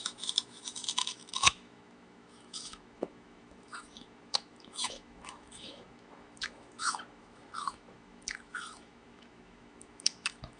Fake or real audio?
fake